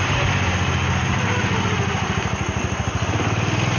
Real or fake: real